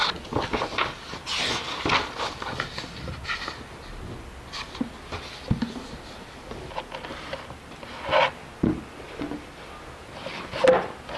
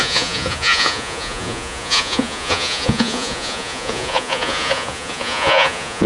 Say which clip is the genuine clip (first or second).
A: first